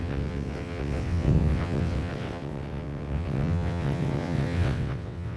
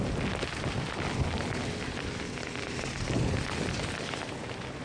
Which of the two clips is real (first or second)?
second